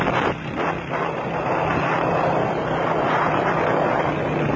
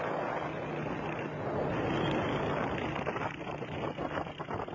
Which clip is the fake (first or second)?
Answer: first